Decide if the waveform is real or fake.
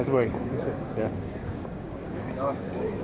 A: fake